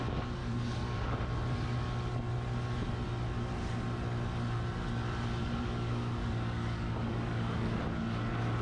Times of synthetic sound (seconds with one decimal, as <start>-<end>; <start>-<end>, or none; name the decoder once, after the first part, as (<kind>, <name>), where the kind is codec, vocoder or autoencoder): 0.4-1.2 (codec, DAC); 5.4-7.8